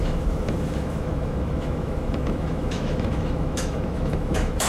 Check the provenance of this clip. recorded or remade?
remade